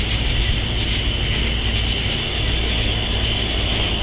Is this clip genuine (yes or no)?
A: yes